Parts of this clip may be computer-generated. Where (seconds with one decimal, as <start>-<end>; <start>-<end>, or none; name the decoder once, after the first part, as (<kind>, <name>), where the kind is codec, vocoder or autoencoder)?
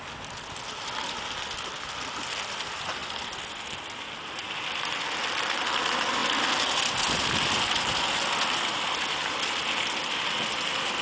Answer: none